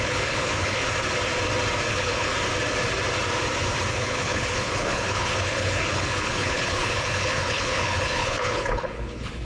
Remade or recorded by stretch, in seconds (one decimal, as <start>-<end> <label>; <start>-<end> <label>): 0.0-0.8 remade; 0.8-1.9 recorded; 1.9-2.3 remade; 2.3-3.9 recorded; 3.9-9.4 remade